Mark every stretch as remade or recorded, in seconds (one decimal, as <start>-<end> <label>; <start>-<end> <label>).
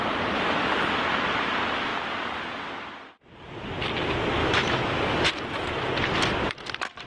0.0-4.4 recorded; 4.4-5.3 remade; 5.3-7.1 recorded